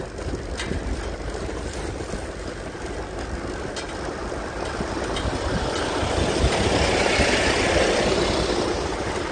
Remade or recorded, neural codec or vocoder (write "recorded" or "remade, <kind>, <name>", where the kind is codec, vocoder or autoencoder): recorded